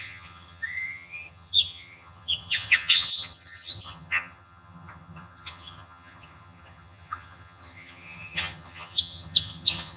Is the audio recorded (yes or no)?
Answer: no